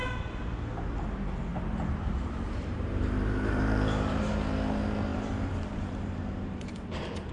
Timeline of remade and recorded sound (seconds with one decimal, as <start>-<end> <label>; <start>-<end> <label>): 0.0-1.5 recorded; 1.5-4.3 remade; 4.3-5.1 recorded; 5.1-7.3 remade